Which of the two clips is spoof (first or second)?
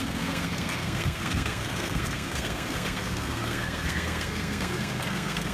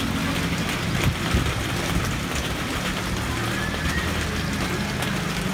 first